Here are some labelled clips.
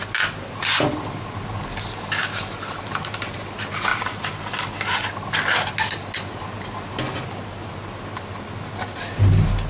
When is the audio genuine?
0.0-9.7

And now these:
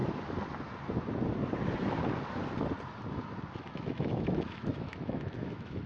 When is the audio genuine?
0.0-3.5

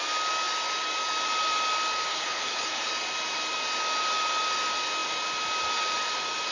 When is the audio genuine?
0.0-2.1; 2.9-6.5

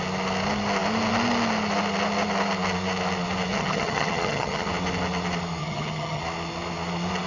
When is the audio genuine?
0.0-3.5; 4.7-5.6; 6.2-7.3

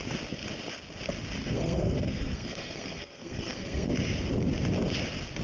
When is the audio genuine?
0.0-1.4; 3.9-5.4